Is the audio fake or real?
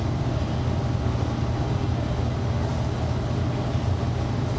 real